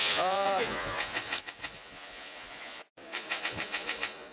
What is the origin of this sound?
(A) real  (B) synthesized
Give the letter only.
B